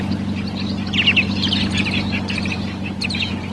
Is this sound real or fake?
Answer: real